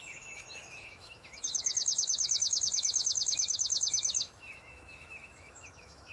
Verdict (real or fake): fake